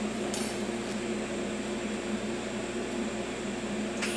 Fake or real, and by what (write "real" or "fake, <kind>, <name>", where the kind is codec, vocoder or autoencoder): real